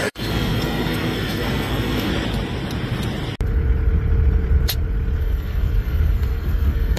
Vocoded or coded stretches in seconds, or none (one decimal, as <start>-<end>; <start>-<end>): 0.0-2.1; 5.2-7.0